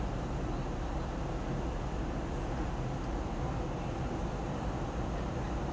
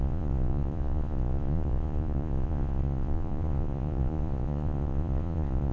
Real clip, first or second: first